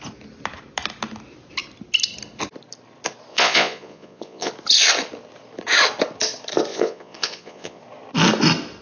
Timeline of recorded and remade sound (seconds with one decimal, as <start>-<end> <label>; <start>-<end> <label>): 0.0-3.3 recorded; 3.3-4.5 remade; 4.5-6.7 recorded; 6.7-7.8 remade; 7.8-8.8 recorded